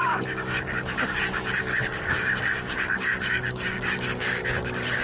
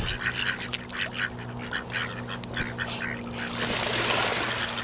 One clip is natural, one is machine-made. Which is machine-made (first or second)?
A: first